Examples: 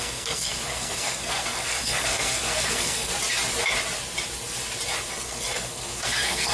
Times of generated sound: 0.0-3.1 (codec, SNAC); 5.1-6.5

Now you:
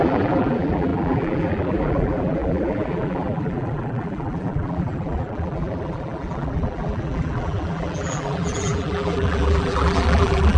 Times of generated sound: 0.0-10.6 (vocoder, BigVGAN v2)

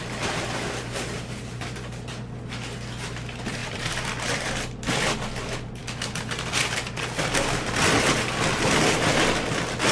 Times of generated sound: none

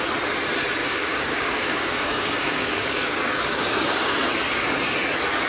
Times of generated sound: 0.8-4.1 (codec, DAC)

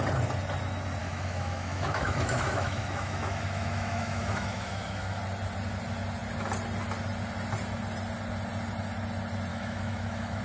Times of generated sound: 1.0-5.2 (autoencoder, DAC-VAE); 9.5-10.4

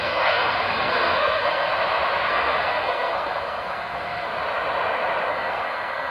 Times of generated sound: 0.0-1.7 (codec, SNAC); 2.3-4.3; 5.3-6.1

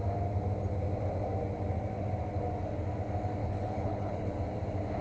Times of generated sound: 3.4-4.4 (codec, HILCodec)

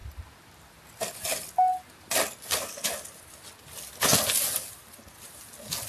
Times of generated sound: none